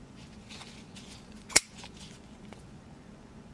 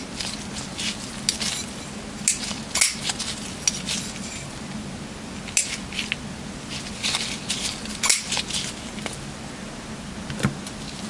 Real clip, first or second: second